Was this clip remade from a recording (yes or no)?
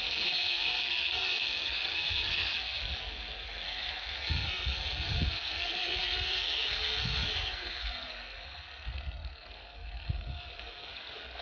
yes